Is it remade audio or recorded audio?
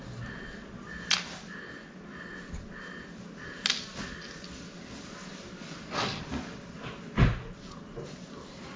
recorded